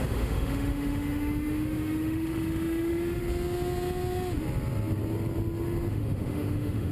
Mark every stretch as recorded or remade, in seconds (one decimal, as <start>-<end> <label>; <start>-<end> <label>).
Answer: 0.0-3.2 remade; 3.2-5.9 recorded; 5.9-6.9 remade